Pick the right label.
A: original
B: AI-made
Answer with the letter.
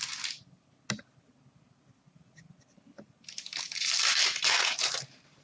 A